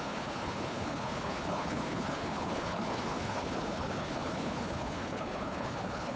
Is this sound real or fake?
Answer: fake